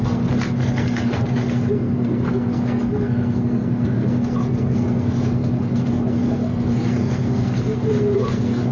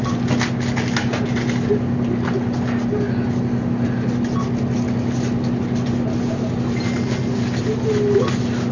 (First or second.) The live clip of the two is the second